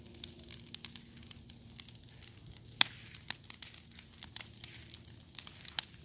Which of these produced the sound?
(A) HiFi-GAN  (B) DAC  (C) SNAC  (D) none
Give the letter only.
D